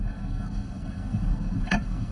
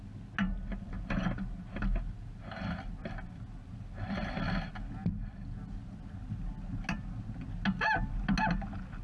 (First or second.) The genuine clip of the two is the second